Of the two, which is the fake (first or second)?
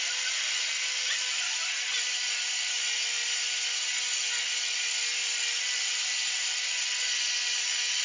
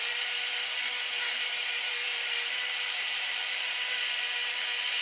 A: second